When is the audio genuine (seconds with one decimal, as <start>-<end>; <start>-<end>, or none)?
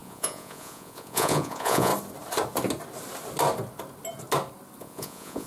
1.9-4.8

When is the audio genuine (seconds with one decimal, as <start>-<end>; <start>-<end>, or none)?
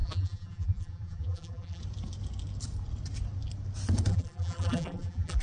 1.8-4.1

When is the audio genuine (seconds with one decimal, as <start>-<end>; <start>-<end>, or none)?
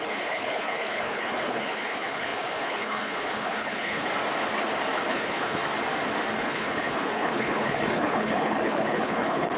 4.1-5.1; 5.6-6.4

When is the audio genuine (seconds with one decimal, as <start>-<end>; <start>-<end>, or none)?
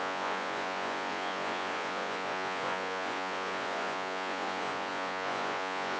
none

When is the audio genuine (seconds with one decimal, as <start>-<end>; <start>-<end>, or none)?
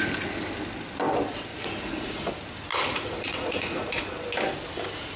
0.0-1.5; 2.3-2.7; 4.0-5.2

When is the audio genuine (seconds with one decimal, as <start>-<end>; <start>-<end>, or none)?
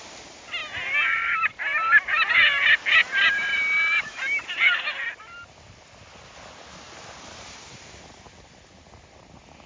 0.0-9.7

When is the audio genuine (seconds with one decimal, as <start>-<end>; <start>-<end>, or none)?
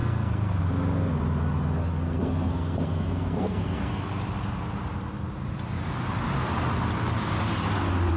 0.6-1.9; 4.0-8.2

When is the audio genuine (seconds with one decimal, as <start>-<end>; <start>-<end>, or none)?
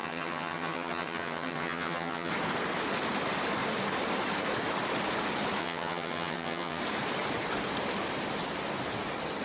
2.3-5.6; 6.8-9.4